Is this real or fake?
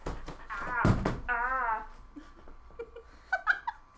real